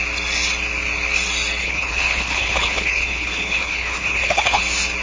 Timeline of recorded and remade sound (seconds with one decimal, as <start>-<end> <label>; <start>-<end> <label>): 0.0-1.6 recorded; 1.6-4.6 remade; 4.6-5.0 recorded